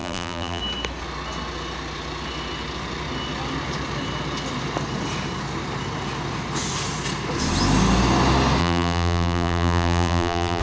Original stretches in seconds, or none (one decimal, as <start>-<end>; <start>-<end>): 0.6-8.6